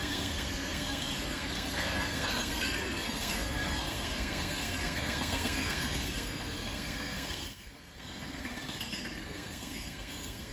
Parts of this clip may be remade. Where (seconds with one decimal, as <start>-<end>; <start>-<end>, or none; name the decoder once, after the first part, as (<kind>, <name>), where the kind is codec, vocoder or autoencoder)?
0.0-10.5 (codec, SNAC)